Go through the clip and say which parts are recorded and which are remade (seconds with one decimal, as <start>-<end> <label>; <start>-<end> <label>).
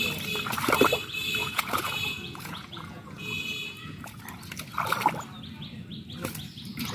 0.0-1.4 recorded; 1.4-4.2 remade; 4.2-6.9 recorded